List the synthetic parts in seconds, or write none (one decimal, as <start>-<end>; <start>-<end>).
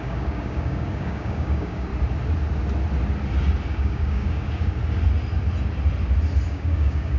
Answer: 0.0-1.9; 3.7-4.8; 6.5-7.2